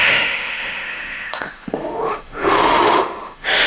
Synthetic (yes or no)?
yes